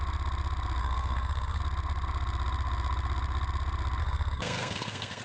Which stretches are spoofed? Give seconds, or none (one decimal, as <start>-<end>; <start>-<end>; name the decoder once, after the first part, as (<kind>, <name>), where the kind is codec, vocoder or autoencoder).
0.8-1.6 (codec, SNAC); 4.0-5.2